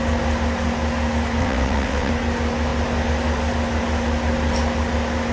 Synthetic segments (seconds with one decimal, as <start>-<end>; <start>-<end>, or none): 1.4-2.1